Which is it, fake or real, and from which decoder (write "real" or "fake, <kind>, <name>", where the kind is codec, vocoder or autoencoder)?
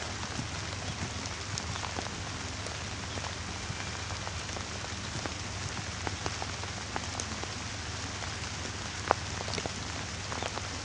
real